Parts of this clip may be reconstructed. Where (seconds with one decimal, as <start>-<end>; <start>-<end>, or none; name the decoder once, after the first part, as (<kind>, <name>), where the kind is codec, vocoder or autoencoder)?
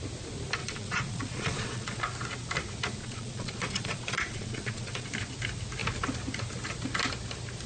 0.6-2.0 (vocoder, Vocos); 3.0-5.1